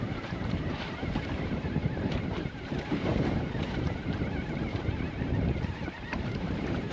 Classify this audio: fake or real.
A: fake